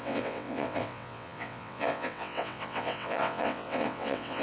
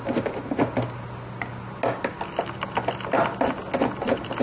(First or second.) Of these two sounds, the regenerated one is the first